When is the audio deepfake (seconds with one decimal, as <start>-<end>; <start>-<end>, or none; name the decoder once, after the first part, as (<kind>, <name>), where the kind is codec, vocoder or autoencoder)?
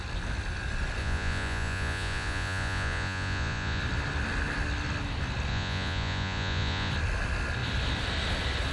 1.0-3.8 (vocoder, Vocos); 5.5-6.9